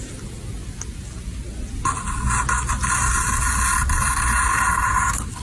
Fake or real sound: real